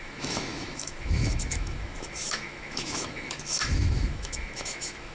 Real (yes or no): no